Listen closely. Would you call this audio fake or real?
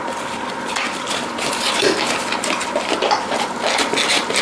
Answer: fake